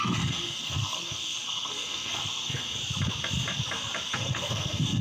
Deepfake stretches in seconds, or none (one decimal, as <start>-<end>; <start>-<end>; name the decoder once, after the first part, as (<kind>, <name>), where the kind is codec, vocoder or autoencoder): 0.0-2.8 (codec, SNAC); 4.1-5.0